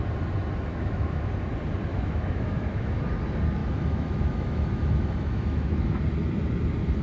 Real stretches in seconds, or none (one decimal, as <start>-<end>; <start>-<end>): 0.0-0.7; 1.3-1.9; 3.0-3.6; 6.0-7.0